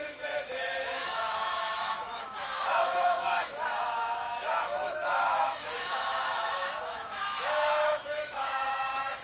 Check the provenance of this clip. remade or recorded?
remade